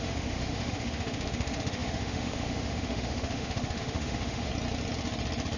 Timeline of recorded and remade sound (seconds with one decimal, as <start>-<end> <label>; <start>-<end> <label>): 0.0-4.5 remade; 4.5-5.6 recorded